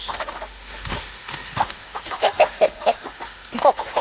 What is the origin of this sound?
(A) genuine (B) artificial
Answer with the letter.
B